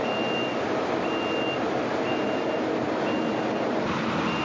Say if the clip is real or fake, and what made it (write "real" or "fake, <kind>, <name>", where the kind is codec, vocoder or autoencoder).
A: real